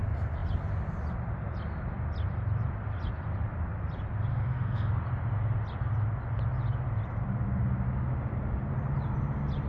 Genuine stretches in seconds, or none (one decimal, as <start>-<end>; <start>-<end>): 0.0-4.3; 4.9-9.7